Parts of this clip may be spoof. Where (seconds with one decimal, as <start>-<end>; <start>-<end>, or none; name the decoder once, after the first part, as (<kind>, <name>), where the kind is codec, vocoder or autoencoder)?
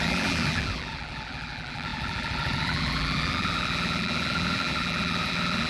0.0-5.7 (vocoder, BigVGAN v2)